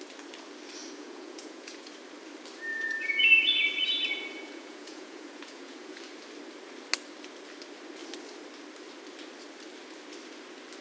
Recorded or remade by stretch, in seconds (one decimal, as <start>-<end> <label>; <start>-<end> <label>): 0.0-0.8 recorded; 0.8-1.9 remade; 1.9-2.7 recorded; 2.7-6.0 remade; 6.0-10.8 recorded